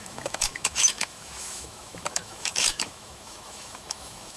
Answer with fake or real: fake